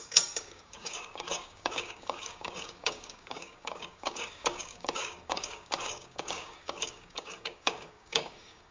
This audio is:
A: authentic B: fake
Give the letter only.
B